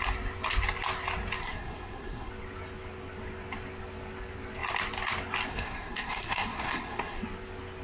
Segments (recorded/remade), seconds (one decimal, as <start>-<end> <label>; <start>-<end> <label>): 0.0-1.4 recorded; 1.4-2.3 remade; 2.3-5.5 recorded; 5.5-7.2 remade; 7.2-7.8 recorded